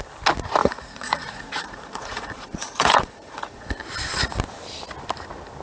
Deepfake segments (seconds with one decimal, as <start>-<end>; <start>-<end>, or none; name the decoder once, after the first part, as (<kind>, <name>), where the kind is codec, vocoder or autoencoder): 0.6-3.8 (vocoder, Vocos)